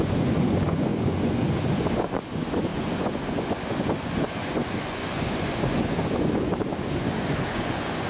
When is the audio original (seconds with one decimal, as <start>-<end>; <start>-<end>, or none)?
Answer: 6.5-7.0